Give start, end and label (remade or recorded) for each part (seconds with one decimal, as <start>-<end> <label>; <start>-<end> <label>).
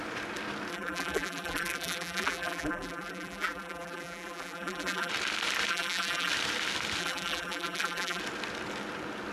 0.0-0.7 recorded; 0.7-5.1 remade; 5.1-5.7 recorded; 5.7-6.3 remade; 6.3-7.0 recorded; 7.0-8.2 remade; 8.2-9.3 recorded